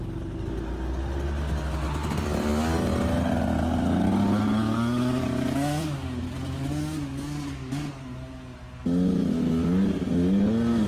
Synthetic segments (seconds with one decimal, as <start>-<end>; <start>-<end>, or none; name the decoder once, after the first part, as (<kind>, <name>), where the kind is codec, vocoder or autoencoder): 3.6-7.9 (codec, DAC)